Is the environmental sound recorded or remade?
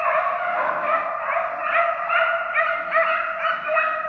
recorded